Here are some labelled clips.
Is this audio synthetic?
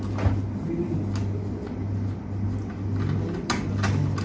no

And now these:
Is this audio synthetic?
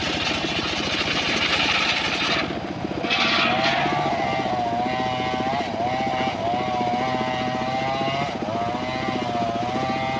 no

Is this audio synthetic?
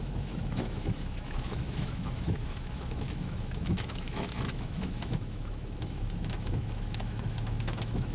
yes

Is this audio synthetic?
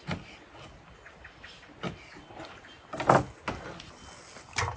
no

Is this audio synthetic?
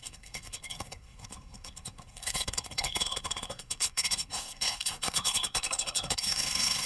yes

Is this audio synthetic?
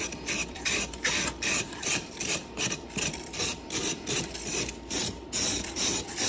yes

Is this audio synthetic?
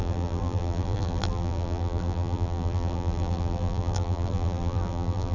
yes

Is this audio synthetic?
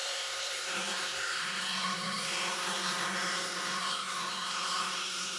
yes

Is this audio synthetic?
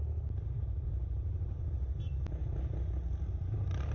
no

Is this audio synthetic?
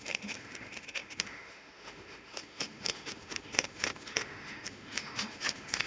yes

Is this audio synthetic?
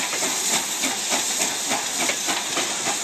no